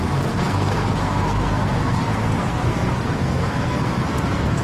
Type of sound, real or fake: fake